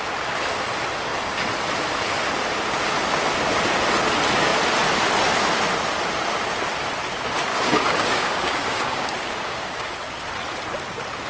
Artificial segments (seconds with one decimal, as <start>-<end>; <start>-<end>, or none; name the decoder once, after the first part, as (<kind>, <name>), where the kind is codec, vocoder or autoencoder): 7.5-9.9 (codec, DAC)